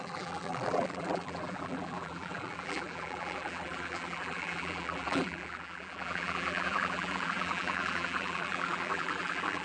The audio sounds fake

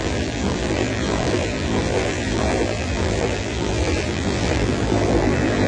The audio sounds fake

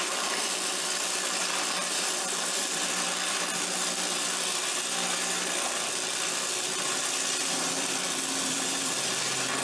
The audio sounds fake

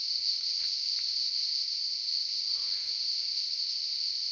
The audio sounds fake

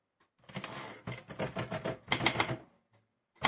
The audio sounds real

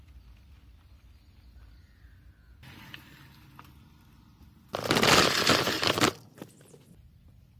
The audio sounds real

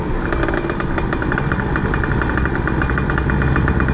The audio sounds real